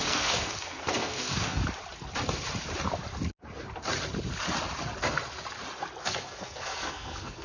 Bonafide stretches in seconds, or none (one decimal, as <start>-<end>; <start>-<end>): 1.6-6.0